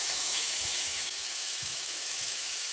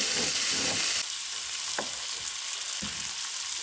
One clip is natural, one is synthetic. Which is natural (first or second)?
second